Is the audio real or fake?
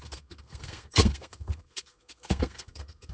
fake